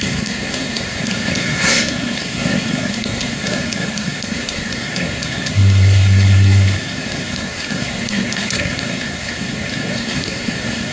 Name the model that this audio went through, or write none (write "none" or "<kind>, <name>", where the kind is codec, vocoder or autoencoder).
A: codec, SNAC